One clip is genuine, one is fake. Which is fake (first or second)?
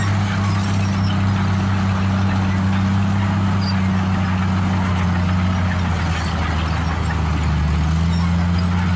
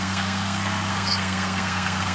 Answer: second